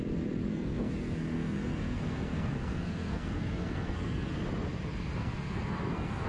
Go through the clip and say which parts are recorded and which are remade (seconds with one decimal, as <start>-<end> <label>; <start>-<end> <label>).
0.0-0.5 recorded; 0.5-4.3 remade; 4.3-5.2 recorded; 5.2-6.3 remade